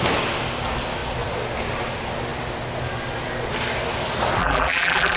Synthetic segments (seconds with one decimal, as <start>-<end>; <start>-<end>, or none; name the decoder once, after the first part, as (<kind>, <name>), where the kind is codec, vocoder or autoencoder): 4.4-5.2 (vocoder, BigVGAN v2)